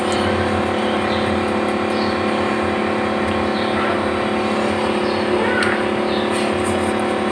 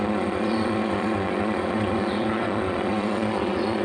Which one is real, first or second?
first